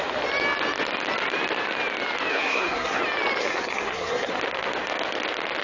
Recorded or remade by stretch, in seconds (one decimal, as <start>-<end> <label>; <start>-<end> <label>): 0.0-2.3 recorded; 2.3-3.0 remade; 3.0-3.4 recorded; 3.4-4.3 remade; 4.3-5.6 recorded